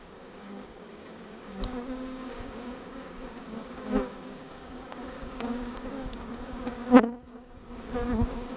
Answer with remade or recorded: remade